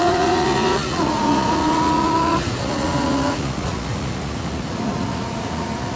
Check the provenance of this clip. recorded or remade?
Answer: remade